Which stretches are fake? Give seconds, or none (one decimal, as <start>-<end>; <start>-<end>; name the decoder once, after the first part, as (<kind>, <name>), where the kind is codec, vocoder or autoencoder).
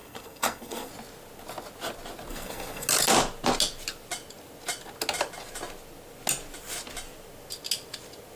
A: 0.0-0.9 (codec, SNAC); 2.3-2.9